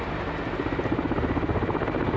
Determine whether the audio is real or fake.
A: real